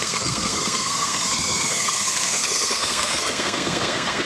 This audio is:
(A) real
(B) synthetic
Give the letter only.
B